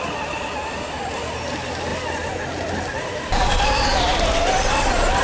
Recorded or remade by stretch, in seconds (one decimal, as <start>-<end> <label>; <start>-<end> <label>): 0.0-5.2 recorded